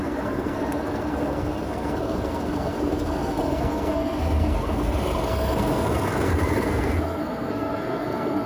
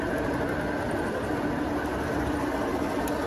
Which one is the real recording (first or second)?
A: second